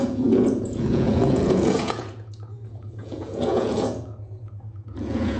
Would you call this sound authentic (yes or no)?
no